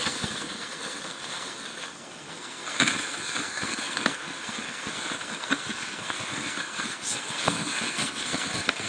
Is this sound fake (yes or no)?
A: yes